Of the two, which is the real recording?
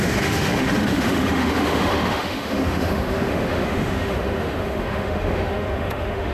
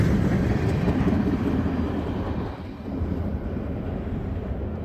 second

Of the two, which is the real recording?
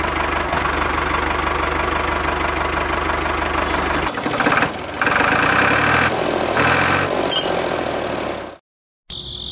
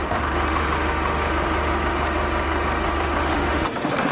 first